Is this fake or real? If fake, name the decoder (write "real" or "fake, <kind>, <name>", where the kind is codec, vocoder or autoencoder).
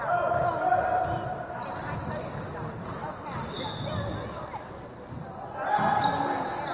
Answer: real